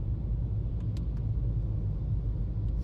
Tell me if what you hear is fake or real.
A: real